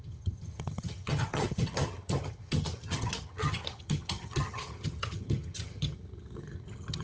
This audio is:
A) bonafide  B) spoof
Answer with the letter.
B